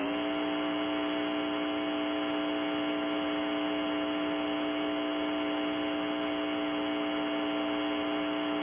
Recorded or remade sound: recorded